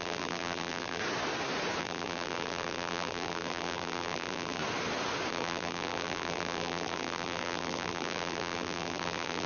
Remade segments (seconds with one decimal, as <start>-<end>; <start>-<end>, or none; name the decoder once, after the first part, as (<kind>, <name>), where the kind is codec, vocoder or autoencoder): 0.0-1.0 (vocoder, BigVGAN v2); 1.8-4.6; 5.3-9.5